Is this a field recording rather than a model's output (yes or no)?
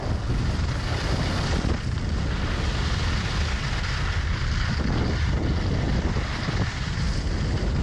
yes